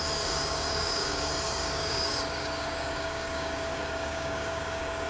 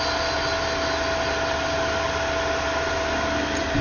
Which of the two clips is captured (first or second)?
second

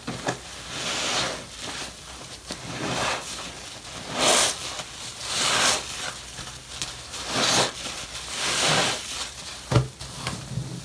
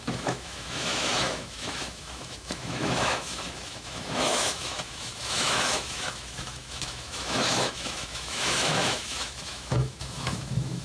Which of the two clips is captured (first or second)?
first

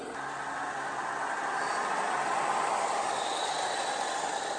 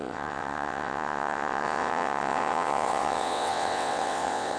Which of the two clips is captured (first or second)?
first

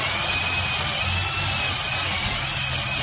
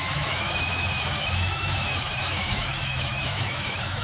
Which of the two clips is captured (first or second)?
first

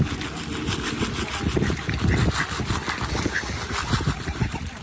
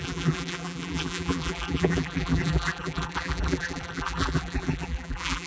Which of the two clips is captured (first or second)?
first